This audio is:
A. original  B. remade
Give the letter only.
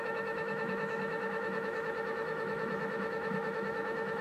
B